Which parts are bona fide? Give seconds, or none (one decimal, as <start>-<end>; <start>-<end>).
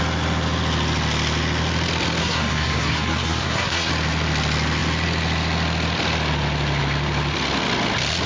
0.0-2.2; 3.9-8.3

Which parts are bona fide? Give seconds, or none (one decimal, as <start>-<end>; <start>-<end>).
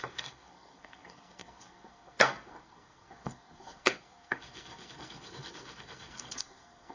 none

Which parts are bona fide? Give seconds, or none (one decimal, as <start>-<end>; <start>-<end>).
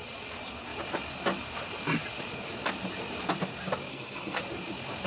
0.0-3.9; 4.4-5.1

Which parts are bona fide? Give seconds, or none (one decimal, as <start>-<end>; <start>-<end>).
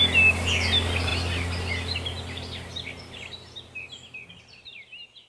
0.0-5.3